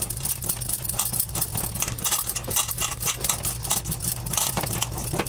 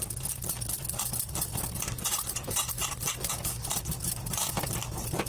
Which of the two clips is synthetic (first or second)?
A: second